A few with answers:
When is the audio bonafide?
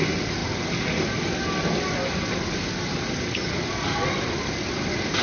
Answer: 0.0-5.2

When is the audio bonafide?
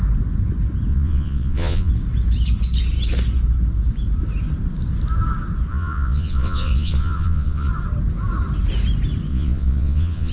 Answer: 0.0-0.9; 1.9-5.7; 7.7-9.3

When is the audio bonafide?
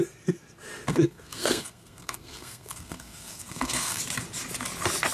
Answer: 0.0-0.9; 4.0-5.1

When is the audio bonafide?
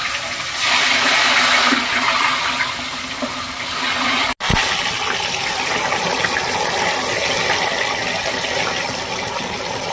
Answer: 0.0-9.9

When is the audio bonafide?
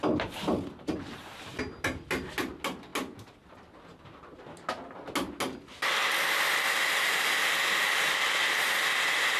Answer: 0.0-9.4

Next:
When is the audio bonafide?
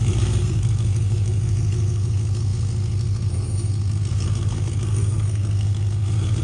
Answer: none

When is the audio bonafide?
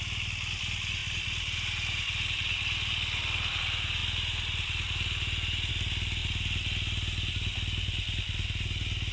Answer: 0.0-9.1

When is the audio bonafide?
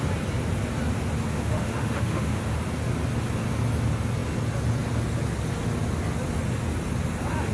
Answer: 0.0-1.3; 2.4-7.5